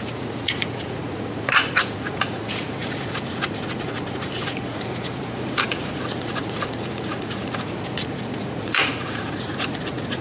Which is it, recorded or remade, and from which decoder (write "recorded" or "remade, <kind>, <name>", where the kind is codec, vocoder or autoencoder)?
remade, vocoder, Vocos